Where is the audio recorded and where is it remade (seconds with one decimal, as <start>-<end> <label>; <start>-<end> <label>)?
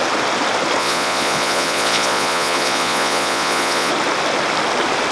0.0-0.8 recorded; 0.8-3.9 remade; 3.9-5.1 recorded